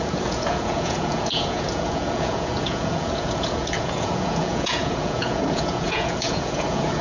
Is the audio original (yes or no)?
no